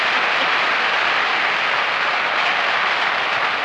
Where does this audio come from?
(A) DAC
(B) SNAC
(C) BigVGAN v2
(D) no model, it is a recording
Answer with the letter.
D